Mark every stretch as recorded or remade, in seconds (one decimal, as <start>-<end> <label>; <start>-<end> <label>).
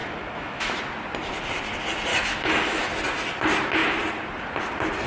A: 0.0-0.8 remade; 0.8-2.1 recorded; 2.1-2.9 remade; 2.9-5.1 recorded